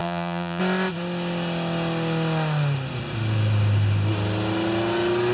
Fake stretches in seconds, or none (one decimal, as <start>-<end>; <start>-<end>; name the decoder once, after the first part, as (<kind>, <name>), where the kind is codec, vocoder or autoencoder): 0.0-0.6 (vocoder, BigVGAN v2)